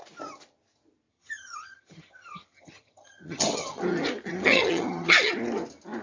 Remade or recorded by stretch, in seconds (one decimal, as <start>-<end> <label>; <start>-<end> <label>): 0.0-1.1 recorded; 1.1-3.8 remade; 3.8-4.3 recorded; 4.3-5.3 remade; 5.3-6.0 recorded